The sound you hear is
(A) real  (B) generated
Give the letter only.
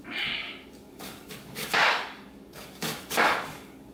B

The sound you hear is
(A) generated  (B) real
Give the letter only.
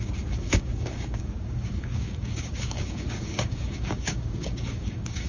A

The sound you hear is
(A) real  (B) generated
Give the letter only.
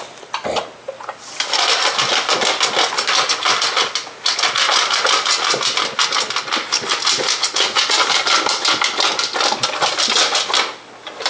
A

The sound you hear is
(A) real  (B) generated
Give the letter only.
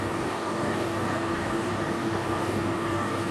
B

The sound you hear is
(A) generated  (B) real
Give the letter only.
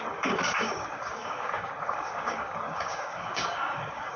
A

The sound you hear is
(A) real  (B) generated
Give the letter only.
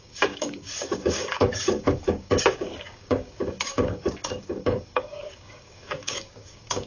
B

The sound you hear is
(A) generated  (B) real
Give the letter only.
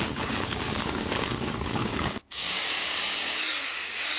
A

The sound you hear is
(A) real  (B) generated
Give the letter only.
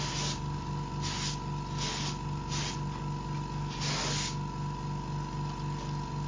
A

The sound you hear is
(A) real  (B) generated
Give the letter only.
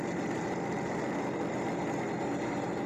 A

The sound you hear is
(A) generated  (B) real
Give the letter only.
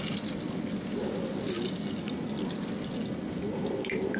B